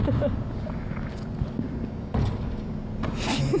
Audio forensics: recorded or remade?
recorded